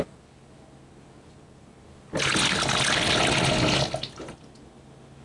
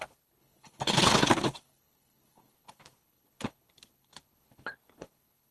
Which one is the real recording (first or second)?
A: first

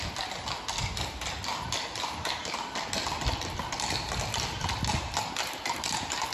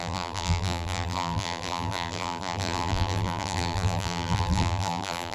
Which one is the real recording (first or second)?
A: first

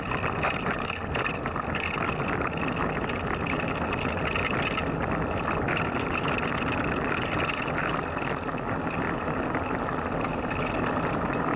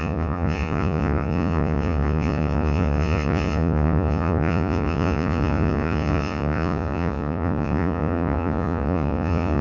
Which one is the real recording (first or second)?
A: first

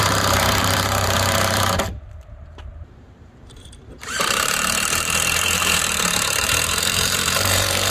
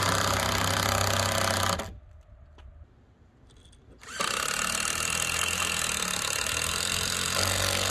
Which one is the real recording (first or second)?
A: second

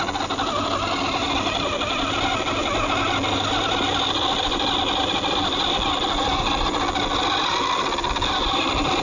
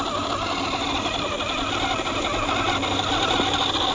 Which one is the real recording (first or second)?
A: first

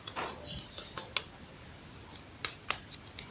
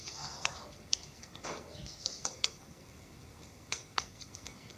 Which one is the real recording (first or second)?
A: first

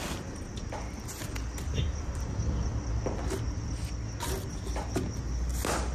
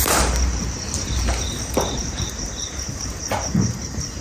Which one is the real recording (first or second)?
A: first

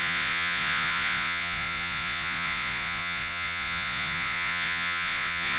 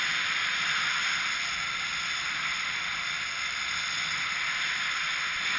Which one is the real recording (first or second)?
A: second